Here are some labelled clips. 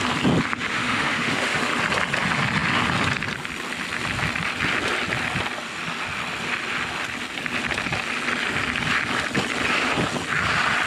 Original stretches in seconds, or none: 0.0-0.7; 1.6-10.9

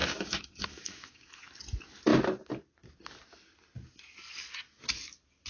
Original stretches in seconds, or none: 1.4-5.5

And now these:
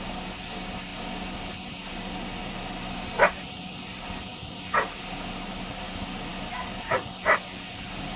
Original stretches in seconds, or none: 0.0-8.2

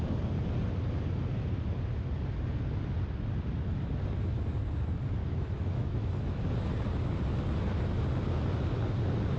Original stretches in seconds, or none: 0.0-5.2; 6.4-9.4